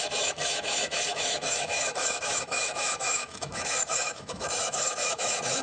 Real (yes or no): no